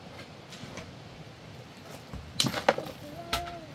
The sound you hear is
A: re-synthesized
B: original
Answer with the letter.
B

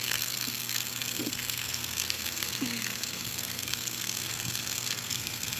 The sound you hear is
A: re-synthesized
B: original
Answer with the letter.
A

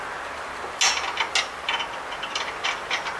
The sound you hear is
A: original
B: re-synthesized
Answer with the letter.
A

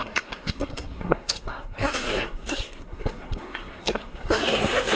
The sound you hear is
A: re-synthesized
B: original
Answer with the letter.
A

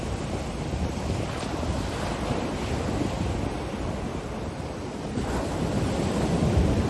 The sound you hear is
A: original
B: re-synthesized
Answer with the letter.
A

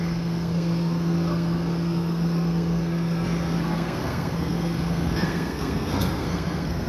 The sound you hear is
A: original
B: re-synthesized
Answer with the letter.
B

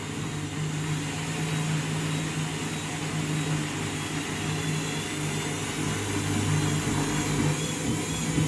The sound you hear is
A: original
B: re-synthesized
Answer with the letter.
A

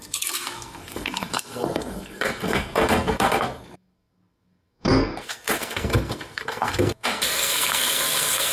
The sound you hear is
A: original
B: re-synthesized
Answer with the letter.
B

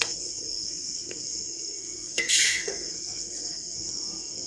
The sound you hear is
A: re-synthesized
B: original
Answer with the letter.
A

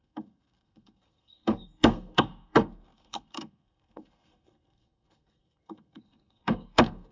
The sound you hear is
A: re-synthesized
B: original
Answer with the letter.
A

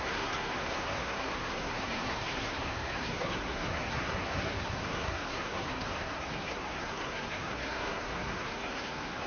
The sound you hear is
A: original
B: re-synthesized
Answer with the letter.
B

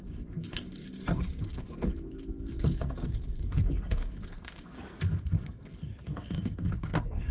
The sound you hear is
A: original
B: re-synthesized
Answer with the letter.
B